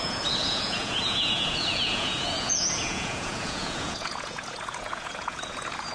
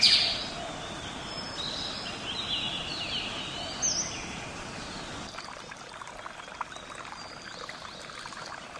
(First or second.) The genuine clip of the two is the second